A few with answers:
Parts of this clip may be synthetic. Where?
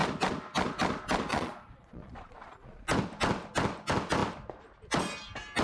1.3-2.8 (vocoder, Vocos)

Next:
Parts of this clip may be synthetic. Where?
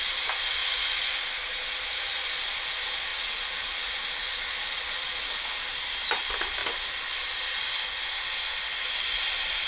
0.6-1.8 (vocoder, Vocos); 3.1-5.7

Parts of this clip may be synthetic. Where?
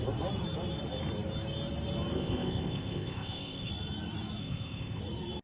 2.1-3.7 (codec, ZipCodec); 4.4-5.0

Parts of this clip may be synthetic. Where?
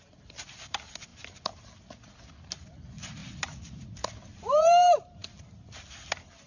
0.0-3.2 (vocoder, BigVGAN v2); 4.1-6.5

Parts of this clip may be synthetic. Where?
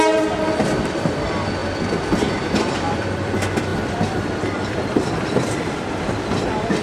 0.0-6.8 (vocoder, BigVGAN v2)